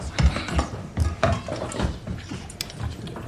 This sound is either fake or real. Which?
real